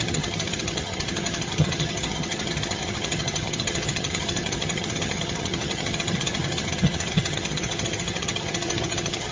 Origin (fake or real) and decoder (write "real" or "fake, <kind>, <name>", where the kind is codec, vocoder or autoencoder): fake, vocoder, HiFi-GAN